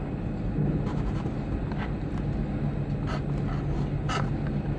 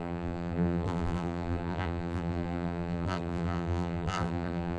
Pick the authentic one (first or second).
first